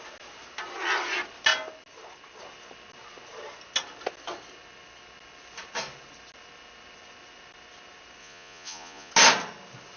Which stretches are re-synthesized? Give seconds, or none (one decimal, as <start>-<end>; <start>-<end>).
8.2-9.1